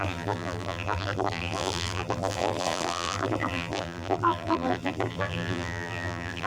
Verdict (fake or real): fake